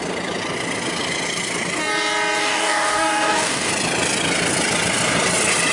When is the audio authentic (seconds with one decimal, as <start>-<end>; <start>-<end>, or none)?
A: 0.0-2.4; 3.7-5.7